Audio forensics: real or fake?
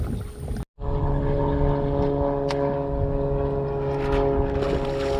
real